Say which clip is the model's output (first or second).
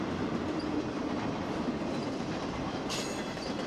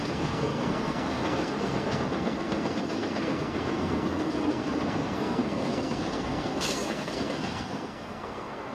second